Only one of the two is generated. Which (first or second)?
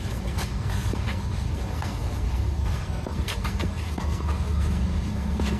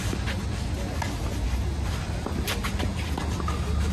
first